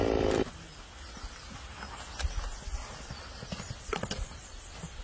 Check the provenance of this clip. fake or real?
real